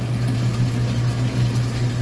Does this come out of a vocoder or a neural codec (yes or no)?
no